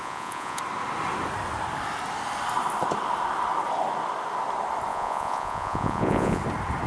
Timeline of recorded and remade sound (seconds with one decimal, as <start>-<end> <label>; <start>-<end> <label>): 0.0-0.6 remade; 0.6-4.9 recorded; 4.9-6.4 remade; 6.4-6.9 recorded